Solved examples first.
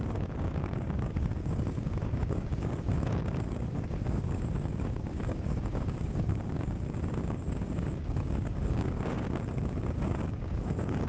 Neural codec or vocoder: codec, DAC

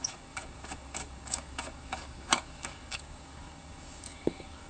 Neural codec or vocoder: codec, DAC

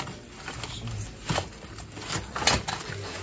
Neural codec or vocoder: none